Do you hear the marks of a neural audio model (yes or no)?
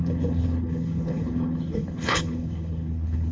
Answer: yes